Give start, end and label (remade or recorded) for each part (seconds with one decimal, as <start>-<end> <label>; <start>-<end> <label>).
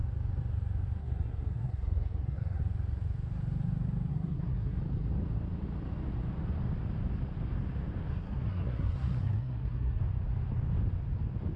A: 0.0-1.0 recorded; 1.0-2.6 remade; 2.6-4.1 recorded; 4.1-4.8 remade; 4.8-8.1 recorded; 8.1-10.0 remade; 10.0-11.6 recorded